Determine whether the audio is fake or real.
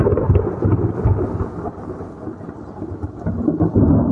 real